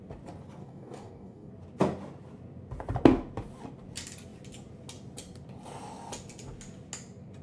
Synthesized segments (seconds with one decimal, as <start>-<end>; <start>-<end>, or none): 0.6-1.5